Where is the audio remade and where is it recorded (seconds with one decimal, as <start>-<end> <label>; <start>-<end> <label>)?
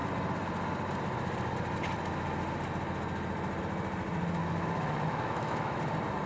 0.0-4.4 recorded; 4.4-5.8 remade; 5.8-6.3 recorded